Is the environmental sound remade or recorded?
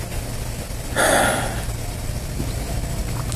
recorded